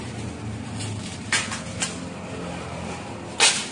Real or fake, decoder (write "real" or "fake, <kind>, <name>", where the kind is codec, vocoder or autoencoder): real